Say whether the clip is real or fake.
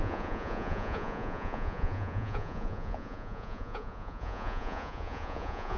fake